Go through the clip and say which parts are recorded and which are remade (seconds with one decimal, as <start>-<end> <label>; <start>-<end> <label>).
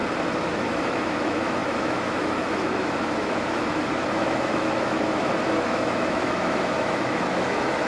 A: 0.0-0.5 recorded; 0.5-7.9 remade